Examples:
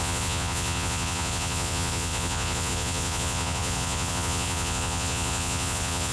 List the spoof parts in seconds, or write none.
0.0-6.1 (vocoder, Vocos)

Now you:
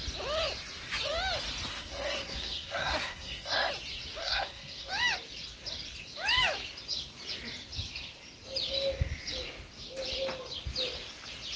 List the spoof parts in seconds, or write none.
1.7-3.7 (codec, SNAC); 4.2-4.9

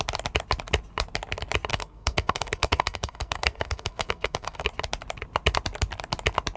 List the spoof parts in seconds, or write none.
1.7-4.7 (codec, SNAC)

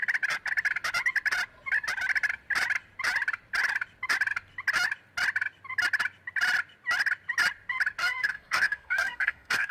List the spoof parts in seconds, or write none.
8.0-9.7 (codec, SNAC)